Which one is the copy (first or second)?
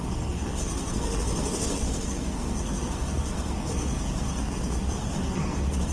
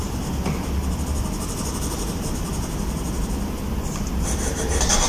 first